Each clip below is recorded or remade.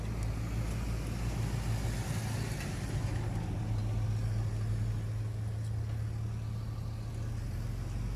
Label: recorded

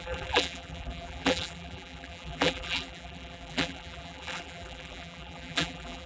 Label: remade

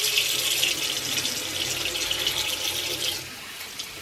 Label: recorded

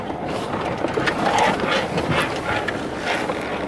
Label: recorded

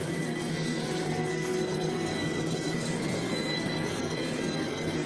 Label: remade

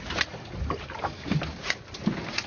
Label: recorded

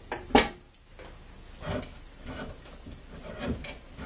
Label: recorded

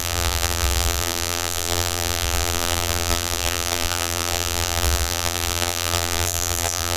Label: remade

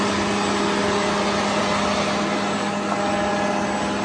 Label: recorded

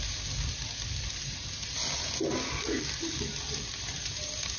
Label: recorded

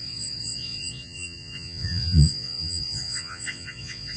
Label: remade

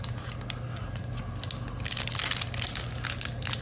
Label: recorded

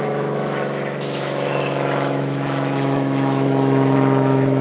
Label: remade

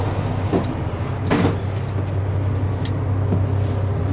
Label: recorded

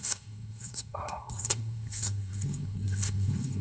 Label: remade